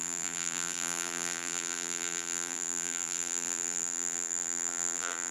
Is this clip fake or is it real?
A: fake